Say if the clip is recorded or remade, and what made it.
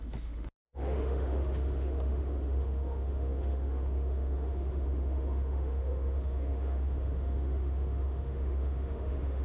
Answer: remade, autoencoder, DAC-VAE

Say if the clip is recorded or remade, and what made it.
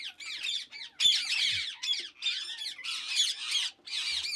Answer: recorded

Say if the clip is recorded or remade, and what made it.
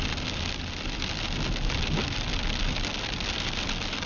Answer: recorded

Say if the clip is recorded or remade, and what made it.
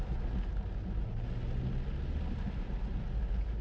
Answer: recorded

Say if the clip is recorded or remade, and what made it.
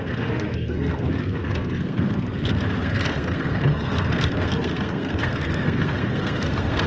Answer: remade, codec, SNAC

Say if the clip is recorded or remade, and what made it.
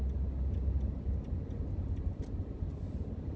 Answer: recorded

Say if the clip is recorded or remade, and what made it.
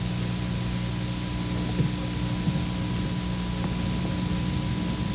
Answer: recorded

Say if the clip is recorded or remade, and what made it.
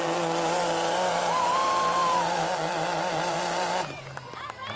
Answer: remade, vocoder, BigVGAN v2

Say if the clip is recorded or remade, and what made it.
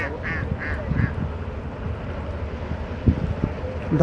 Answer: recorded